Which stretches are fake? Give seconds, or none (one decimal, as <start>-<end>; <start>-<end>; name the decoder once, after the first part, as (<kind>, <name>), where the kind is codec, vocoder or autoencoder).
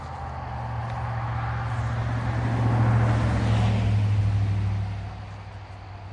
none